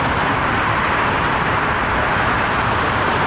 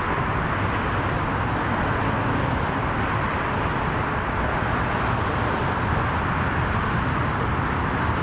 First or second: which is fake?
first